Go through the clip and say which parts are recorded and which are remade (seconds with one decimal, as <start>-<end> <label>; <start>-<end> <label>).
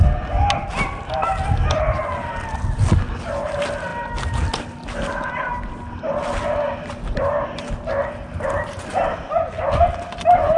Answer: 0.0-10.6 recorded